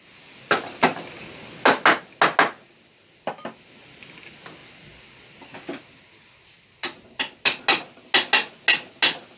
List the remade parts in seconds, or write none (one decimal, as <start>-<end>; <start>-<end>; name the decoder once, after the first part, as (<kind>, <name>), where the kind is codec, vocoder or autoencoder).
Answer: none